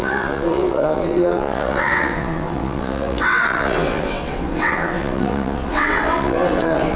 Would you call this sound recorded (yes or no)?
no